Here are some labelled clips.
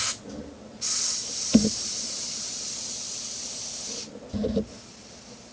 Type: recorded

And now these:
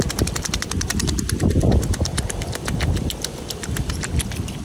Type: recorded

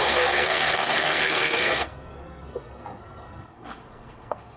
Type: remade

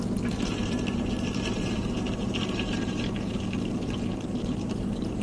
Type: remade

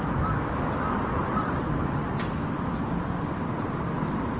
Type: remade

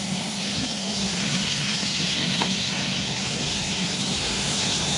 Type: remade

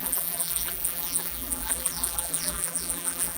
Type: remade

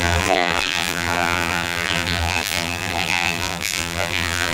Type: remade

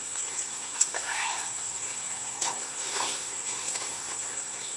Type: remade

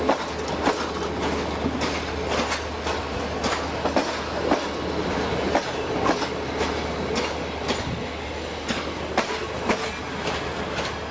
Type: recorded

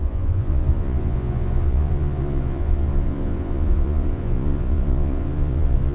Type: remade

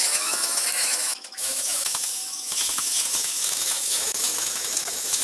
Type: remade